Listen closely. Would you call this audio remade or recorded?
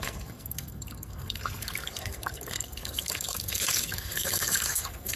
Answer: remade